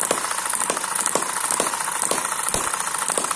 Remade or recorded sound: recorded